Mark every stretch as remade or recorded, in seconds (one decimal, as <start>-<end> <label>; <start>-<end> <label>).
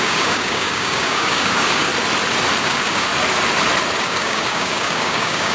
0.0-1.9 remade; 1.9-2.6 recorded; 2.6-3.1 remade; 3.1-4.0 recorded; 4.0-5.5 remade